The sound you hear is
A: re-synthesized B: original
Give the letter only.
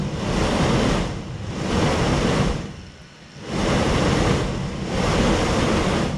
B